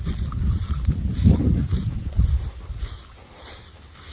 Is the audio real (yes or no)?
yes